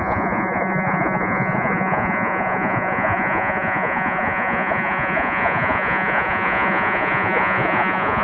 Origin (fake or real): fake